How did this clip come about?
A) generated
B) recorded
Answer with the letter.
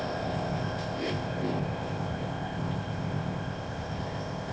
A